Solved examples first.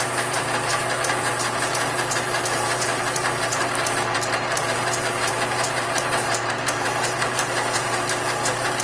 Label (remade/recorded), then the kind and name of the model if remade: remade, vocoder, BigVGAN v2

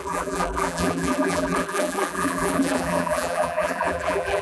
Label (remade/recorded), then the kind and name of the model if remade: remade, vocoder, BigVGAN v2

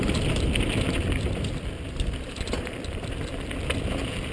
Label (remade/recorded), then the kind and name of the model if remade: remade, vocoder, BigVGAN v2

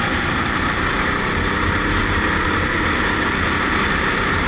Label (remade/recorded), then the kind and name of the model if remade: remade, vocoder, BigVGAN v2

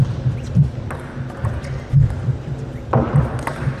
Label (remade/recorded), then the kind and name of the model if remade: recorded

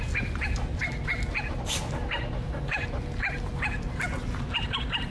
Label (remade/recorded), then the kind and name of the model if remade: recorded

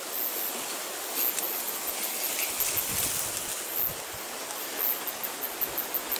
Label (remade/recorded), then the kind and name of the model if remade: recorded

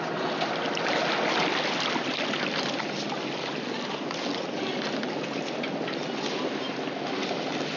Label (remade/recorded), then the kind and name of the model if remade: recorded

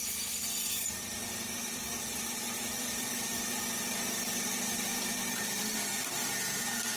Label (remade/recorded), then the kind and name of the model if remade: remade, vocoder, BigVGAN v2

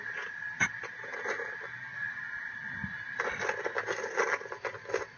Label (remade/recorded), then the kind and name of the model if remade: recorded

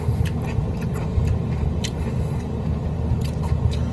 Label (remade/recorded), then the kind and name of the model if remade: recorded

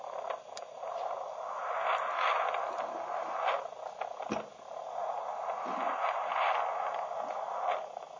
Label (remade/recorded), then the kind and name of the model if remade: recorded